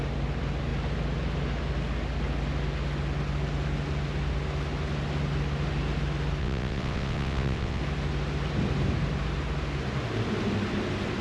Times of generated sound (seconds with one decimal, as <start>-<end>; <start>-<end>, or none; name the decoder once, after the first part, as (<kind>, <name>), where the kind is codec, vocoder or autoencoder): 6.4-7.8 (vocoder, WaveNeXt)